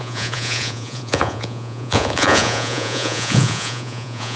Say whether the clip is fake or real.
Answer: fake